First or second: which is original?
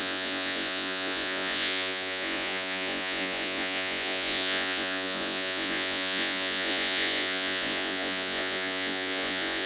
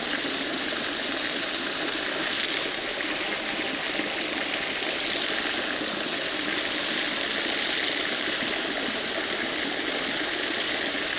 second